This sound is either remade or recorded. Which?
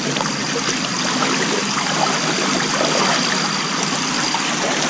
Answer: recorded